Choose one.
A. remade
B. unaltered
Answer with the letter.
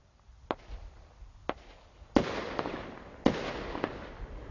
B